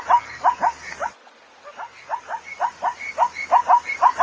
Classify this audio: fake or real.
real